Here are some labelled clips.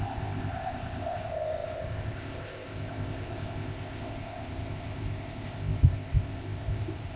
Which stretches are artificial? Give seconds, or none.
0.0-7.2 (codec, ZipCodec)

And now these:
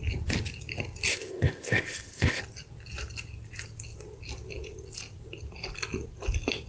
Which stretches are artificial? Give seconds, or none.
1.1-2.4 (codec, ZipCodec)

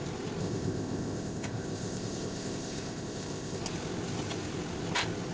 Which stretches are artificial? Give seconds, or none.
0.4-3.6 (codec, ZipCodec)

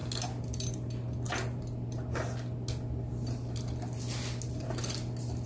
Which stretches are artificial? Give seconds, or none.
none

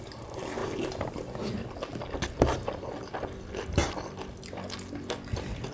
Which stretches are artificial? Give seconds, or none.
none

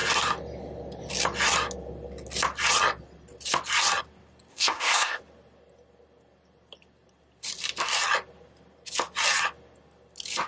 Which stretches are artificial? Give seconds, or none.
4.5-5.2 (codec, ZipCodec)